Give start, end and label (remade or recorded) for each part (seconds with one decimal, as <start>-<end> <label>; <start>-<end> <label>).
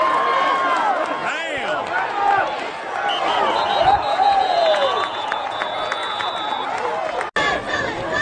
0.0-4.1 recorded; 4.1-6.3 remade; 6.3-8.2 recorded